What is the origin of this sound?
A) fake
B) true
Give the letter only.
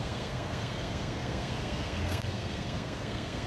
A